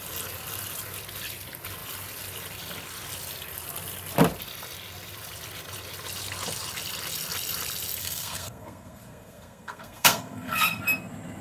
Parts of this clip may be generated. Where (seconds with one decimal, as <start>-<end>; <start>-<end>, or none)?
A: 8.0-10.8